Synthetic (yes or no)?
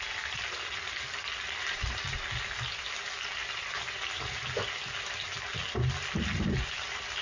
no